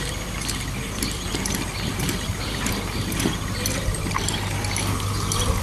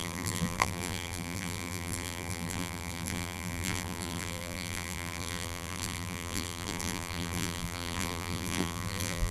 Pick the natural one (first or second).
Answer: first